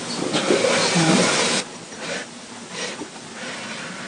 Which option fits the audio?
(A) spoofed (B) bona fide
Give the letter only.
B